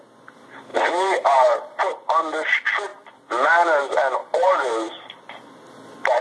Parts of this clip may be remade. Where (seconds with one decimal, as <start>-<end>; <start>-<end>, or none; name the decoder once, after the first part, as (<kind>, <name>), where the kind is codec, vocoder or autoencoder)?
0.7-1.8 (vocoder, BigVGAN v2); 4.2-5.2